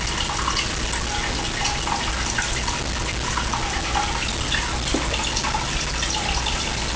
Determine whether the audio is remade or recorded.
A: recorded